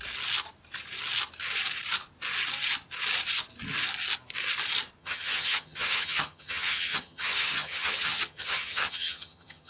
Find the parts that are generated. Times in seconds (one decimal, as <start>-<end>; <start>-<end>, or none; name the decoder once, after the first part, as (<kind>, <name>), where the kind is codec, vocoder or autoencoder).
5.0-9.7 (vocoder, HiFi-GAN)